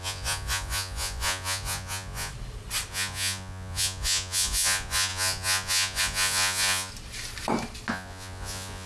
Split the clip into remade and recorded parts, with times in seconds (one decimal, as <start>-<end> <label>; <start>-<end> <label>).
0.0-2.3 remade; 2.3-2.9 recorded; 2.9-6.9 remade; 6.9-7.9 recorded; 7.9-8.9 remade